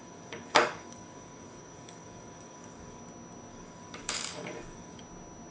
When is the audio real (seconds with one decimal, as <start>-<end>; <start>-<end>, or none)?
3.0-3.5; 5.0-5.5